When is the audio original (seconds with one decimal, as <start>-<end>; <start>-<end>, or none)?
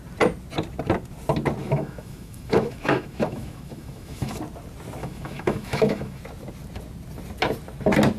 0.0-1.6; 4.4-5.0; 6.2-8.2